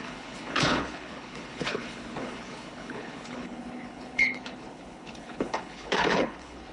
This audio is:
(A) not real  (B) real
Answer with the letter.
A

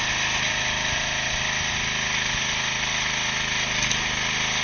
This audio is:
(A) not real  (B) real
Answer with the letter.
B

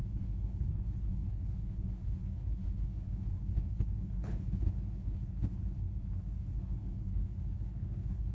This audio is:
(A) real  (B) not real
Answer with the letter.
B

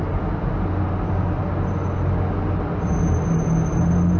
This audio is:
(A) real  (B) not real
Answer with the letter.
A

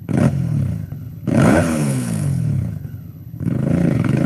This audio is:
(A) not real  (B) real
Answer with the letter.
A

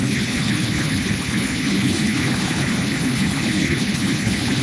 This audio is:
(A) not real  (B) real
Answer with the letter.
A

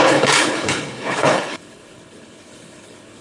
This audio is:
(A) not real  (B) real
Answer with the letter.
A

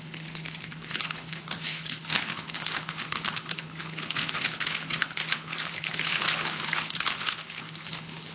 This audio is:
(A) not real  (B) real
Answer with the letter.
A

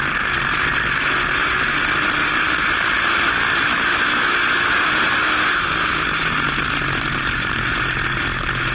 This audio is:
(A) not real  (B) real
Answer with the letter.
B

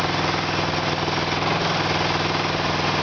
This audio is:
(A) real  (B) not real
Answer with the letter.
A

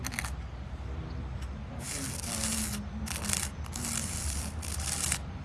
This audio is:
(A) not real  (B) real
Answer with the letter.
B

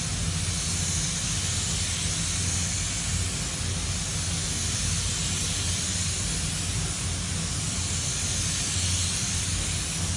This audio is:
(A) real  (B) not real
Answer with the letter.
A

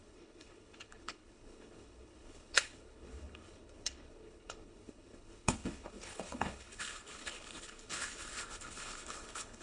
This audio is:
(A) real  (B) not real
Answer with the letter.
B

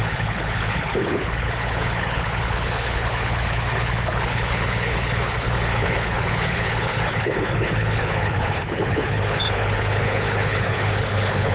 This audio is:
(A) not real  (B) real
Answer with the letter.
A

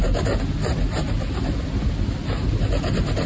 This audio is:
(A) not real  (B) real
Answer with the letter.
B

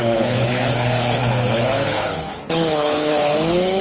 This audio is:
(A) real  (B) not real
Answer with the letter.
B